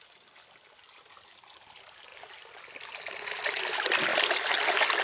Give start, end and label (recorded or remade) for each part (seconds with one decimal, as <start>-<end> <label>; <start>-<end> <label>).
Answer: 0.0-5.0 recorded